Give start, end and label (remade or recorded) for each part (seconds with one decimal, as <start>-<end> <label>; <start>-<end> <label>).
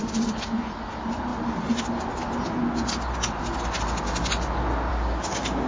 0.0-4.9 recorded; 4.9-5.7 remade